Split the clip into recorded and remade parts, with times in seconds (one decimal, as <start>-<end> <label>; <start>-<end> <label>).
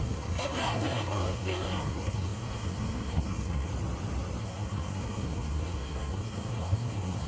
0.0-3.7 remade; 3.7-4.4 recorded; 4.4-7.3 remade